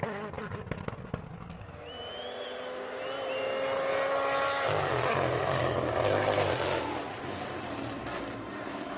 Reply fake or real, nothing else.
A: real